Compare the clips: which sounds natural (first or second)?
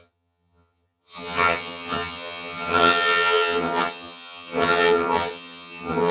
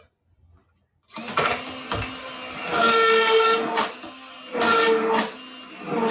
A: second